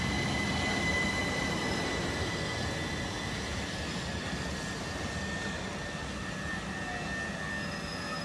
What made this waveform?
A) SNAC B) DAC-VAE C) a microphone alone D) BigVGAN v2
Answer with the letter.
C